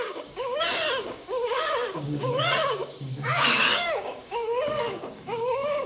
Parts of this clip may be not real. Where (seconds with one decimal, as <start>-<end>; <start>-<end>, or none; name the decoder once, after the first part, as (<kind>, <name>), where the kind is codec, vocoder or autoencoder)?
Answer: 0.0-5.9 (codec, DAC)

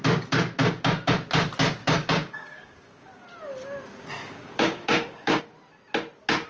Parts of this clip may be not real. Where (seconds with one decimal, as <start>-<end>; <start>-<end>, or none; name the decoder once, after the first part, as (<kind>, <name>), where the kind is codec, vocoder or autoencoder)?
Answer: 0.6-1.1 (codec, DAC); 1.8-3.1; 4.2-5.4

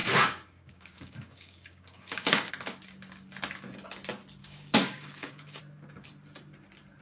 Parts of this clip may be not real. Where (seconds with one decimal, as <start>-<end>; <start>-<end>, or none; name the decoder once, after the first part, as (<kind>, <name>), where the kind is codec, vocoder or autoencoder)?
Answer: 0.0-2.5 (codec, DAC); 4.4-5.6

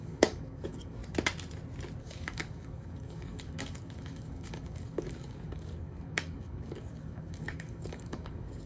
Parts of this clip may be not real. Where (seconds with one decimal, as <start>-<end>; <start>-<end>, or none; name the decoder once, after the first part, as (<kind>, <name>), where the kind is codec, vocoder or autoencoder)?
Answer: 0.0-1.0 (codec, DAC); 2.0-8.7